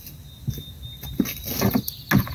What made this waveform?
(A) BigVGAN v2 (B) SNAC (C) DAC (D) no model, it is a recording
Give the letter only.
D